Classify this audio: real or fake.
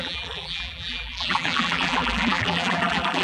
fake